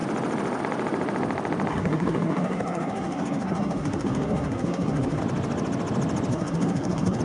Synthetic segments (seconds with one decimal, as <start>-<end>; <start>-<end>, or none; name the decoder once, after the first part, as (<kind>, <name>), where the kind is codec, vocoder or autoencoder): 1.7-5.2 (codec, SNAC); 6.3-7.2

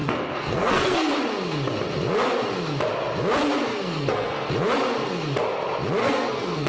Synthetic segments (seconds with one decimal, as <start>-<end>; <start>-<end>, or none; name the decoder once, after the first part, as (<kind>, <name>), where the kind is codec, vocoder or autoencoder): 0.0-1.1 (codec, SNAC); 3.7-4.5; 6.0-6.7